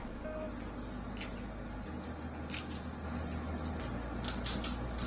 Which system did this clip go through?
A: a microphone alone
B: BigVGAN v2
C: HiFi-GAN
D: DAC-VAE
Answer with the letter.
A